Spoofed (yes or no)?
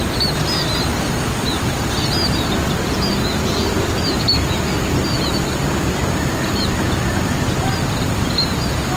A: no